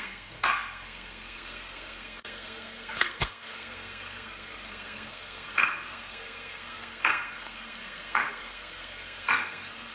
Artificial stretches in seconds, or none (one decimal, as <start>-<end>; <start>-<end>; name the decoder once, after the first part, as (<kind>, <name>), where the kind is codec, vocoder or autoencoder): 0.0-9.9 (codec, SNAC)